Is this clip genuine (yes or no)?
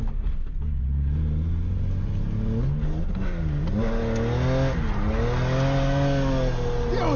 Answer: yes